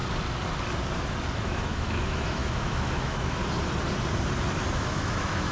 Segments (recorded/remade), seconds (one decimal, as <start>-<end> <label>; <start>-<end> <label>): 0.0-1.4 recorded; 1.4-3.4 remade; 3.4-4.7 recorded; 4.7-5.5 remade